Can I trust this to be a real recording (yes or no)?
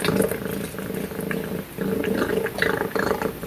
yes